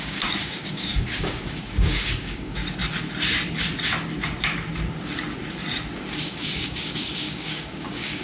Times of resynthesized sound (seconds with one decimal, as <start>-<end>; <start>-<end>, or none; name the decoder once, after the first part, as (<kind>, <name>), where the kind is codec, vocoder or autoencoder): 0.0-2.6 (codec, DAC); 6.2-8.2

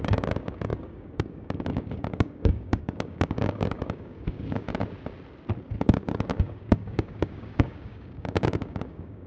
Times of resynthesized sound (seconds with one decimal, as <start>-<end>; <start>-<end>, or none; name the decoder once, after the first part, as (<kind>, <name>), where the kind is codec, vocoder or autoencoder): 0.0-4.7 (codec, DAC); 5.6-9.3

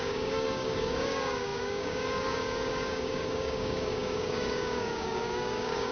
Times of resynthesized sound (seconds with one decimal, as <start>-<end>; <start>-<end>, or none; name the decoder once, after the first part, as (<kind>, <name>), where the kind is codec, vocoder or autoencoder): 0.0-5.9 (codec, DAC)

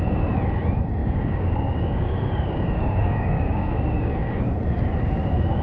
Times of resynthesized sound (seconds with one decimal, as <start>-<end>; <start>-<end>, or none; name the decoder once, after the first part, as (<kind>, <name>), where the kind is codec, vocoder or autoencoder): 1.0-4.4 (codec, DAC)

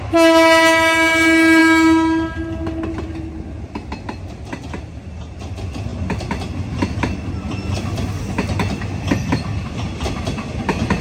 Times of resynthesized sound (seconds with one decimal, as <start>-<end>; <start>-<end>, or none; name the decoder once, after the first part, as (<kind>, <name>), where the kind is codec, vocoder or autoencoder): none

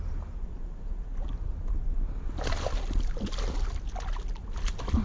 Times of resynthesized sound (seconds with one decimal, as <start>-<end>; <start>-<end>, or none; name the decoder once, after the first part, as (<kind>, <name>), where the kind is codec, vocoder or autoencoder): none

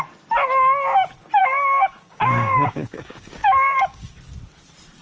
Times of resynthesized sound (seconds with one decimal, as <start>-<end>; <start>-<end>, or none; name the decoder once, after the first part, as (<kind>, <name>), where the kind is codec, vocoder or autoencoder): 1.4-4.2 (codec, DAC)